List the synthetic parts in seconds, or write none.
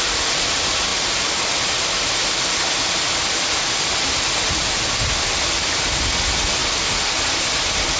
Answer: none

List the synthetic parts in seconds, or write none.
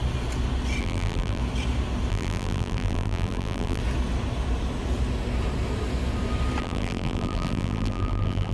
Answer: 0.8-1.4 (vocoder, BigVGAN v2); 2.1-3.8; 6.6-8.5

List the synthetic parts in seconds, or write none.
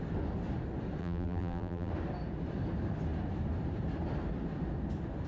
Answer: 1.0-1.9 (vocoder, BigVGAN v2)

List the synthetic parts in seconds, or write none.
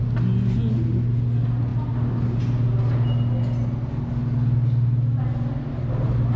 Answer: none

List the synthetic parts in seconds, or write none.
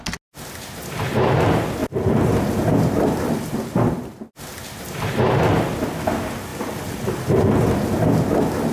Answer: 1.8-4.1 (vocoder, BigVGAN v2); 4.5-5.8; 6.5-7.5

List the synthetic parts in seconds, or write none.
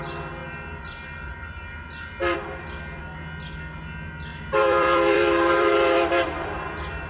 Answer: 0.4-3.0 (vocoder, BigVGAN v2); 4.3-7.1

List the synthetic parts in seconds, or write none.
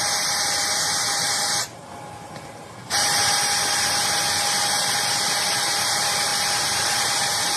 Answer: 0.0-1.8 (vocoder, BigVGAN v2); 5.4-7.6